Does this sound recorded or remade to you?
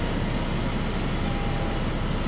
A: recorded